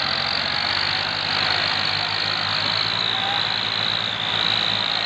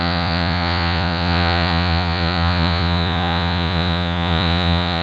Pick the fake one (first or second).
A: second